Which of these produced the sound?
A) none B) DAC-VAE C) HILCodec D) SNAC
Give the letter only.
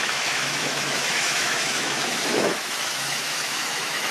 B